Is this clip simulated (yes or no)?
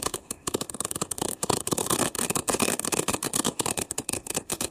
yes